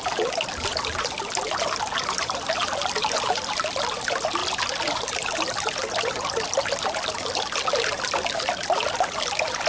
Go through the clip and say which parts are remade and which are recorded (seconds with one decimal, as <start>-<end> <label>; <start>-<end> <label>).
0.0-9.7 recorded